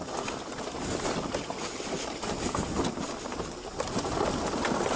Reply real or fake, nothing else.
real